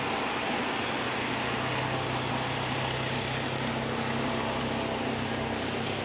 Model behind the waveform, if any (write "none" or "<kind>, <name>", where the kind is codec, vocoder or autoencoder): none